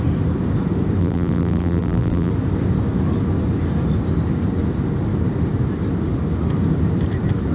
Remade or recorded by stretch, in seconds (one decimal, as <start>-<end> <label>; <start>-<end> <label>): 0.0-1.0 recorded; 1.0-2.3 remade; 2.3-7.5 recorded